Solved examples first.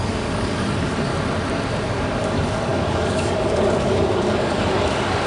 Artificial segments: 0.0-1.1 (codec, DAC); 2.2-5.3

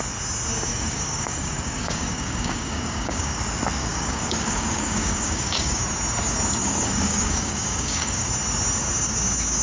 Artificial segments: 0.7-3.4 (codec, DAC); 3.8-5.8; 6.6-8.3

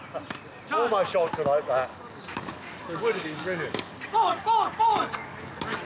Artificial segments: 1.9-5.8 (codec, DAC)

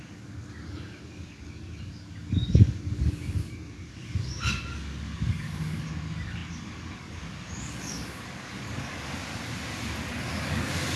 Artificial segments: 0.0-9.3 (codec, DAC); 10.2-11.0